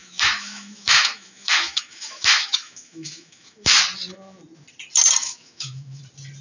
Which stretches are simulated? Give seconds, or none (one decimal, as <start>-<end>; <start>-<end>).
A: 0.0-3.8; 5.2-6.0